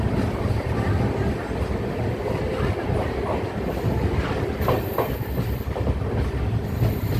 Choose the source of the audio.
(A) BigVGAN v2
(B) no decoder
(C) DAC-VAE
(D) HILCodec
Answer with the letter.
B